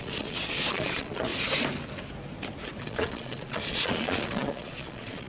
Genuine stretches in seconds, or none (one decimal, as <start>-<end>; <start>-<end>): 1.3-2.8